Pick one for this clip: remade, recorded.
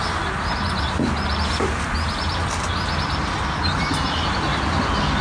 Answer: recorded